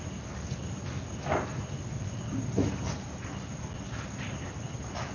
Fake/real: real